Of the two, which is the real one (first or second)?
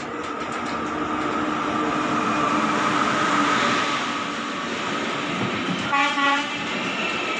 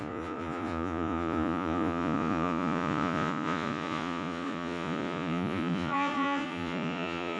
first